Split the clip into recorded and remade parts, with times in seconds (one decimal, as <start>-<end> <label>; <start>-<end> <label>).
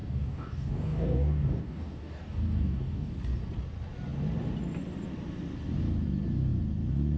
0.0-3.1 remade; 3.1-7.2 recorded